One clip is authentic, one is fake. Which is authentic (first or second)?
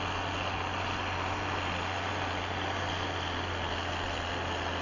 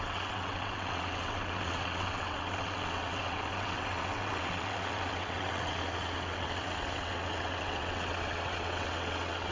first